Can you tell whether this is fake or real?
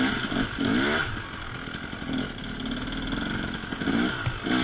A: real